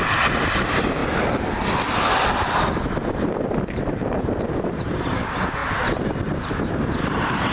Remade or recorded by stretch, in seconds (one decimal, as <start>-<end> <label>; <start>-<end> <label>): 0.0-1.0 remade; 1.0-3.1 recorded; 3.1-5.6 remade; 5.6-6.2 recorded; 6.2-7.5 remade